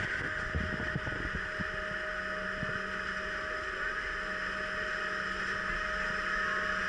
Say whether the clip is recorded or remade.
recorded